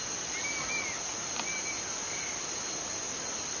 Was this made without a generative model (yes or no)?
yes